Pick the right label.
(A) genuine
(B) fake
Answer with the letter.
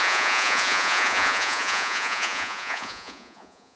B